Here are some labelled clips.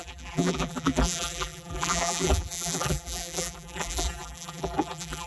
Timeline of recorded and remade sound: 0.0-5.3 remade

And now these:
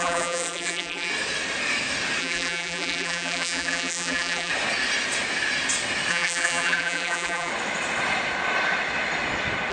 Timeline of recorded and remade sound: 0.0-1.1 remade; 1.1-2.2 recorded; 2.2-4.5 remade; 4.5-6.1 recorded; 6.1-7.5 remade; 7.5-9.7 recorded

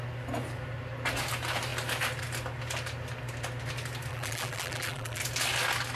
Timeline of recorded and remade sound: 0.0-4.1 recorded; 4.1-5.2 remade; 5.2-6.0 recorded

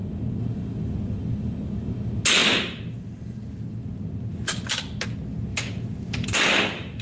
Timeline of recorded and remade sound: 0.0-5.5 recorded; 5.5-7.0 remade